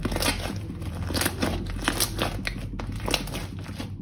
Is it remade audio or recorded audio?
recorded